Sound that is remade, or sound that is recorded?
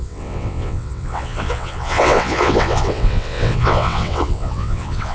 remade